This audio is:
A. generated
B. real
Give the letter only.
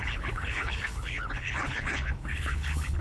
A